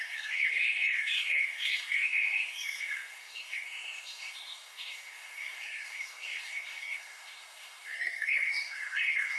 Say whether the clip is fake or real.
fake